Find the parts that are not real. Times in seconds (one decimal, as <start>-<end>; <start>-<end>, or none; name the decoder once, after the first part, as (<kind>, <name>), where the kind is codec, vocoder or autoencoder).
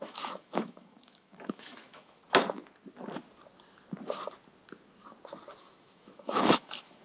0.0-2.2 (autoencoder, DAC-VAE); 5.6-7.0